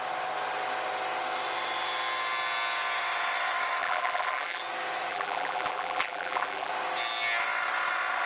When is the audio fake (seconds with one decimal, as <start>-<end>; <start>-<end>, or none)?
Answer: 3.8-4.6; 5.1-6.7